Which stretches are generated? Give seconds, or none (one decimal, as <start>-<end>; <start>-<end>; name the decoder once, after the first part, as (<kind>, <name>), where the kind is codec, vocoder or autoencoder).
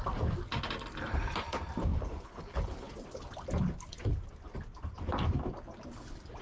1.9-2.9 (codec, HILCodec)